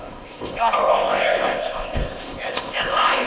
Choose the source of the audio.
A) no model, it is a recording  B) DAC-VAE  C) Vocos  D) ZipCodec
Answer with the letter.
D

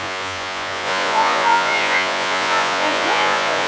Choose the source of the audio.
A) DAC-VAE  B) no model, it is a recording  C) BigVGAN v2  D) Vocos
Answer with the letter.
D